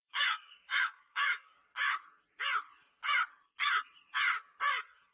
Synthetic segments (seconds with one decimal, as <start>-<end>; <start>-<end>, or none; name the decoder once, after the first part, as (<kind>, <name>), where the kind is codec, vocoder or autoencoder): 0.0-1.6 (codec, DAC)

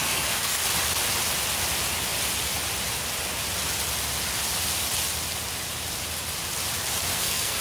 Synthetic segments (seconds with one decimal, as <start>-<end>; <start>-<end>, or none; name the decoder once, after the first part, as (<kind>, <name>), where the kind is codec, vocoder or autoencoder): 0.0-0.6 (codec, SNAC); 7.1-7.6

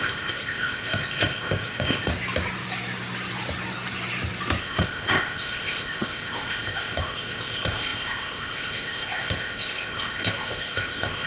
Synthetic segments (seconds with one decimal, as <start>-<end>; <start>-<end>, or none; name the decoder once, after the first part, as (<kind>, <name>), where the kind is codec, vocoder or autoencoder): 0.0-2.1 (codec, ZipCodec); 4.6-11.3